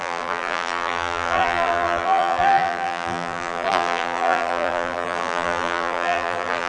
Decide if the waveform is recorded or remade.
remade